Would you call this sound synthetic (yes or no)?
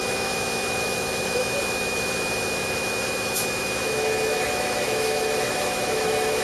yes